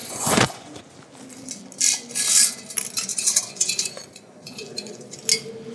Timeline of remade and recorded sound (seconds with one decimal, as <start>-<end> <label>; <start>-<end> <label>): 0.0-0.8 remade; 0.8-3.1 recorded; 3.1-5.0 remade; 5.0-5.7 recorded